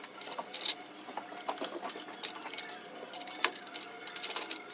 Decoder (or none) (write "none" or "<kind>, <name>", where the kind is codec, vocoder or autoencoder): none